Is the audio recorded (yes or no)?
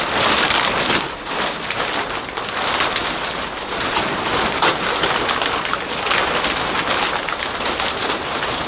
yes